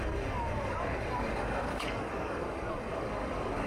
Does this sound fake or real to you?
fake